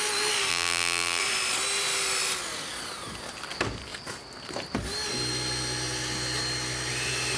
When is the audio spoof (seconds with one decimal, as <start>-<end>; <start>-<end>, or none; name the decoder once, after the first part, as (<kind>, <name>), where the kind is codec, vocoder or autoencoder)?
0.5-1.2 (vocoder, BigVGAN v2)

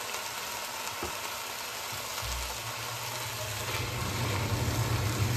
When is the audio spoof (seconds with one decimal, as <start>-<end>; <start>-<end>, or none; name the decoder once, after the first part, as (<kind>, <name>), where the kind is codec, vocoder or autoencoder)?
none

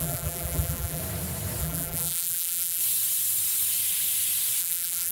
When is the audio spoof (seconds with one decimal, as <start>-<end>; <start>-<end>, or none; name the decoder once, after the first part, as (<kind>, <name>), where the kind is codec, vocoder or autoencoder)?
0.0-1.0 (vocoder, BigVGAN v2); 1.6-2.8; 4.6-5.1

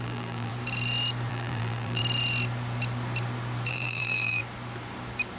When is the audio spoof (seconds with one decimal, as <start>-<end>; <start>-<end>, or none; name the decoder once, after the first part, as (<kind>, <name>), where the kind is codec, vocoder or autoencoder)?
0.0-0.5 (vocoder, BigVGAN v2); 1.3-2.0; 3.7-4.4

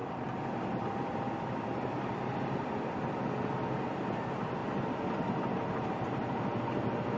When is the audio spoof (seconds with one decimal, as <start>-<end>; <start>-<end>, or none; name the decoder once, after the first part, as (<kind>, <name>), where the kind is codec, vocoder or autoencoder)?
0.0-1.2 (vocoder, BigVGAN v2)

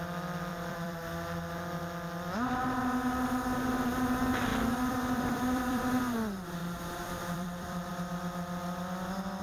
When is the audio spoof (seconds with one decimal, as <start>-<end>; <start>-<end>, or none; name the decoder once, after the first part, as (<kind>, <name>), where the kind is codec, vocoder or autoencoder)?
0.5-1.5 (vocoder, BigVGAN v2); 4.5-6.0; 6.6-7.9